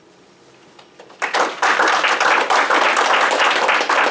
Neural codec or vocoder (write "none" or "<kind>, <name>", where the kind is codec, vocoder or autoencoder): none